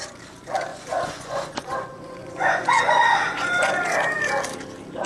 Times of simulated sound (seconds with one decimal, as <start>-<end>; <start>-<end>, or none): 0.7-3.8